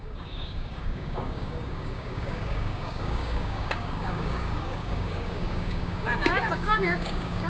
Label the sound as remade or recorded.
remade